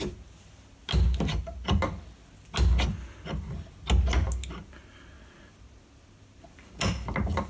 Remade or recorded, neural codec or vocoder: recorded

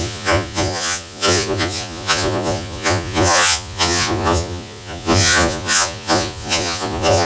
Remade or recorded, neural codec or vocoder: remade, vocoder, Vocos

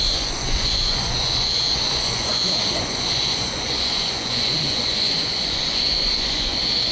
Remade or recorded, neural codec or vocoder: remade, vocoder, Vocos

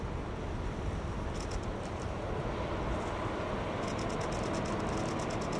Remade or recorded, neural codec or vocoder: recorded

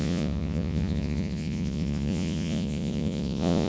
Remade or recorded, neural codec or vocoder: remade, vocoder, Vocos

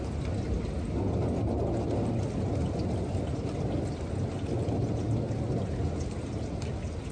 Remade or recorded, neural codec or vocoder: recorded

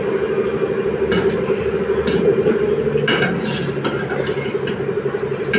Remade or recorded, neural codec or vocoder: recorded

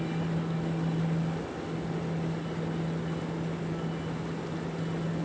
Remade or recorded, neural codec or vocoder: recorded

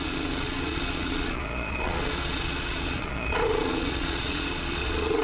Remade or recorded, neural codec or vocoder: remade, vocoder, Vocos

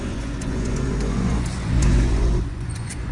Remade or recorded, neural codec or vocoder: remade, vocoder, Vocos